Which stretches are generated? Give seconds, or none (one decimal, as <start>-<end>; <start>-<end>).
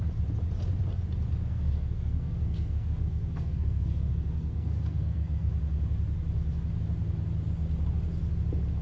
1.4-5.5